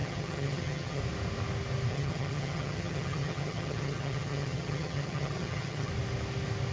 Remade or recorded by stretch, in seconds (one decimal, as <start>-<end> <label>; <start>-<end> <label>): 0.0-1.0 remade; 1.0-1.9 recorded; 1.9-5.9 remade; 5.9-6.7 recorded